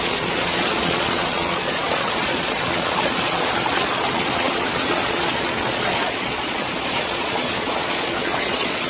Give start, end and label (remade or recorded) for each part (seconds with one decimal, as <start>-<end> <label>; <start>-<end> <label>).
0.0-8.9 remade